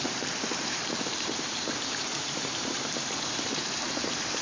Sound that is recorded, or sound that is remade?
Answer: remade